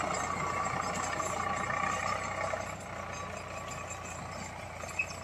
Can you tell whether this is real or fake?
real